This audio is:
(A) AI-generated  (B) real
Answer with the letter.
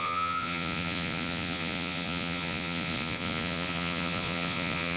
A